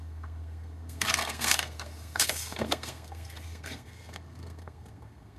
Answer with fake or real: fake